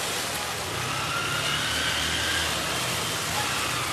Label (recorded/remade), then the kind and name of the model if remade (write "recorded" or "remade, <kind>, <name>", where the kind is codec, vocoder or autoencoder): recorded